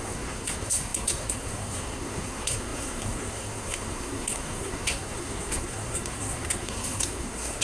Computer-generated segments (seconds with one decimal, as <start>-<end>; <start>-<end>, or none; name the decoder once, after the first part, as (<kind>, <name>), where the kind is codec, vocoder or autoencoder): 0.0-7.6 (codec, SNAC)

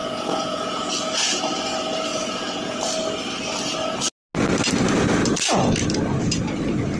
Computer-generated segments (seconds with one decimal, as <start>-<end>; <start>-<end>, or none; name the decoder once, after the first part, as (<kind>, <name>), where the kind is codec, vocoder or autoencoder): 0.0-1.4 (vocoder, Vocos); 2.1-2.8